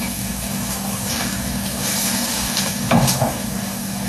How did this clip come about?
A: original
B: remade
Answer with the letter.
B